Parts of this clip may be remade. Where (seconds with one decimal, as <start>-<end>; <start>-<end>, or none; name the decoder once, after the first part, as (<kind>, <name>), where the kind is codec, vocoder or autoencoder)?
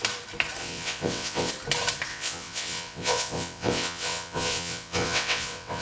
0.6-1.5 (vocoder, WaveNeXt); 2.1-5.8